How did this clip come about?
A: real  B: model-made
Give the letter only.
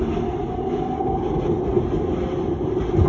A